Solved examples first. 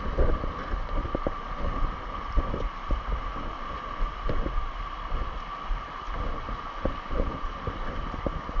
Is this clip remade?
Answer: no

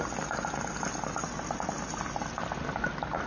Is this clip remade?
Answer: no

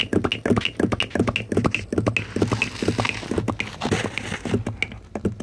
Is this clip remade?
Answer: no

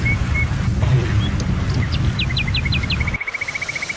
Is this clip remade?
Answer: no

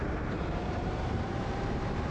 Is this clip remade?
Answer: yes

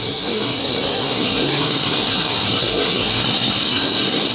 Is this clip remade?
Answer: yes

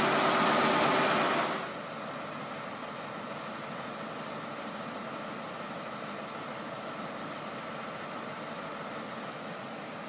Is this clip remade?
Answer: no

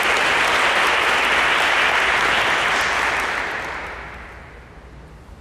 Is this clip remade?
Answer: no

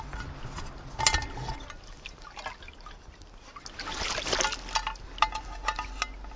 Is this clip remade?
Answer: no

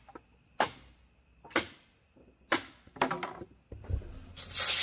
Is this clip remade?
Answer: no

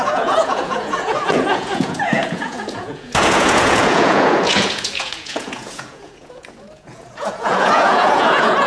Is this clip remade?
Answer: yes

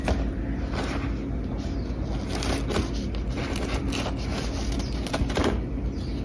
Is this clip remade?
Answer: no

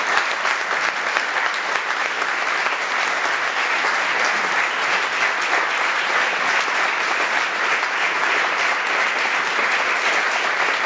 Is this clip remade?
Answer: no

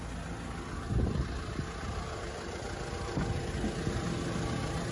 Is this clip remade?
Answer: no